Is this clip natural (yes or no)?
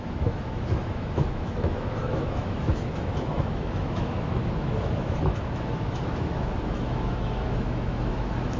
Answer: no